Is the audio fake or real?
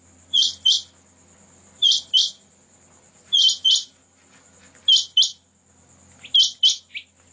real